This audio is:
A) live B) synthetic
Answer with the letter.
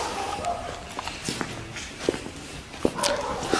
A